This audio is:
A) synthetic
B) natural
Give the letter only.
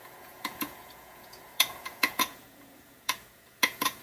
A